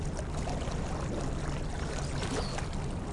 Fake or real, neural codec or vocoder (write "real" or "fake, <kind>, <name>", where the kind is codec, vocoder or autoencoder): real